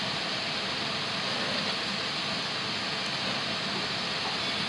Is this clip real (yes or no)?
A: yes